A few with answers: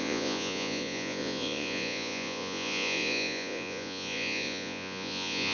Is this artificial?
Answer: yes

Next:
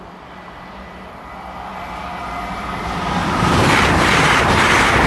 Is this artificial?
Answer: no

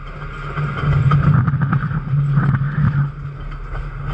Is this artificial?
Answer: no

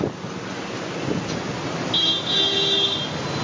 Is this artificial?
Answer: no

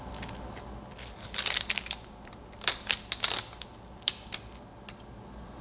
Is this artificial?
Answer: no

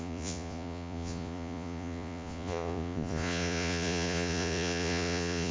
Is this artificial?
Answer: yes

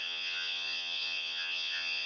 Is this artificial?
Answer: yes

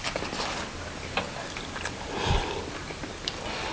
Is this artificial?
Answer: no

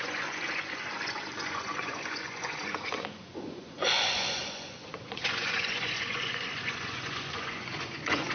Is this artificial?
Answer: yes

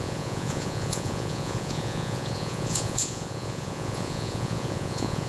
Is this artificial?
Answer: yes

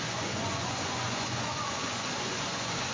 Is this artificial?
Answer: yes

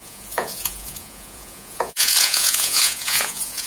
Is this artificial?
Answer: yes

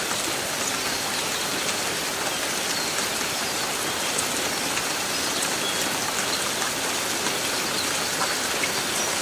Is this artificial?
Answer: no